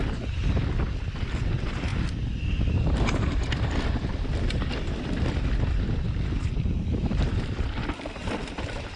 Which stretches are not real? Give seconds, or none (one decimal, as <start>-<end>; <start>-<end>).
1.9-4.5; 7.0-9.0